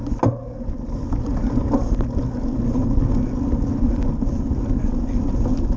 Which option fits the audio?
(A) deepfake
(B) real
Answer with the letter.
B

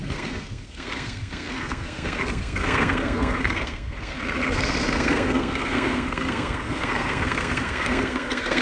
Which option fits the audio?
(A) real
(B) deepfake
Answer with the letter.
B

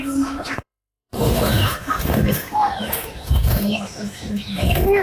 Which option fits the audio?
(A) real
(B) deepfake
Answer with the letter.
B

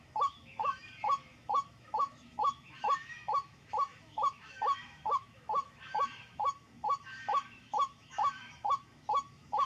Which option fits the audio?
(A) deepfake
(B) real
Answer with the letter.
A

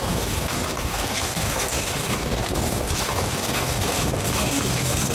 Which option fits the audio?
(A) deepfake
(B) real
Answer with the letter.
A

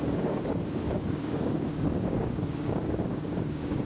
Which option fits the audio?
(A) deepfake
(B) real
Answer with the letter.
A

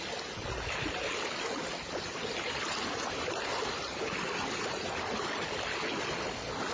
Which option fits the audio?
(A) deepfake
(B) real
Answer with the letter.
B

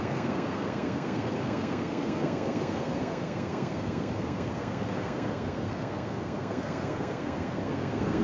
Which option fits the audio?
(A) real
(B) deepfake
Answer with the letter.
B